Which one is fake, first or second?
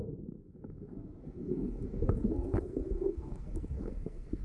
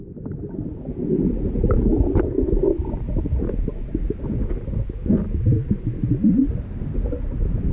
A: first